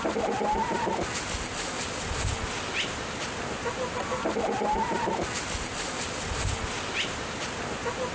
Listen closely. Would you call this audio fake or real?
real